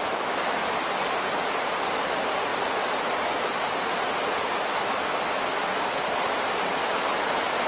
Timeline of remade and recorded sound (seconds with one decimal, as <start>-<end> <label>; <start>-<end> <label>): 0.0-7.7 recorded